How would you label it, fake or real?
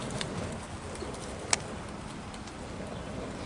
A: real